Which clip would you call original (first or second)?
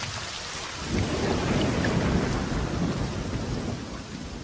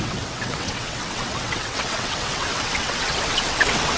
first